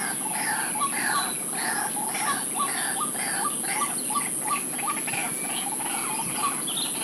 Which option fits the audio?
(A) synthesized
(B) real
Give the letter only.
B